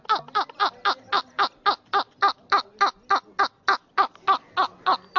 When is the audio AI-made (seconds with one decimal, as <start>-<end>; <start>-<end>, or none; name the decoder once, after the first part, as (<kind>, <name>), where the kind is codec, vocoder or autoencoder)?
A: none